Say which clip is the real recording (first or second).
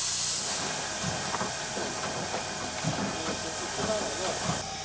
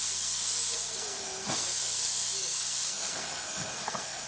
first